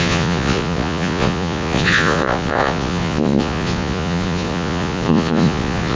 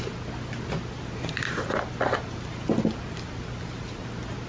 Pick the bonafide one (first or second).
second